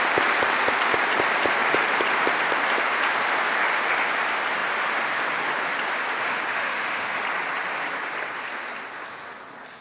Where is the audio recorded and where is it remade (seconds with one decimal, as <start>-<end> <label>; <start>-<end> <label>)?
0.0-6.5 recorded; 6.5-7.2 remade; 7.2-9.8 recorded

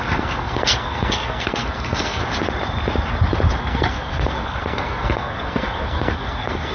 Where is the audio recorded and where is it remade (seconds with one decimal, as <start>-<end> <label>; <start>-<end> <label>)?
0.0-2.2 remade; 2.2-3.6 recorded; 3.6-6.7 remade

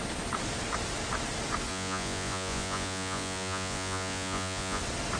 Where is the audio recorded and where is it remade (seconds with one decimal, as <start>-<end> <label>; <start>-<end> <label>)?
0.0-1.7 recorded; 1.7-4.8 remade; 4.8-5.2 recorded

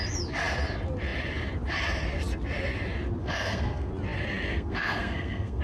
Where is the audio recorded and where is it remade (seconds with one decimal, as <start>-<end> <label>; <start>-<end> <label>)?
0.0-3.2 recorded; 3.2-3.9 remade; 3.9-4.5 recorded; 4.5-5.6 remade